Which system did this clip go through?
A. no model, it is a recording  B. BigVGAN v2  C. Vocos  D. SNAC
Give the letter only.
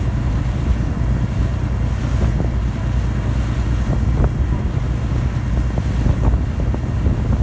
A